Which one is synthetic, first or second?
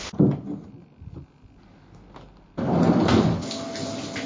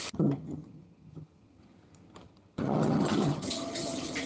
second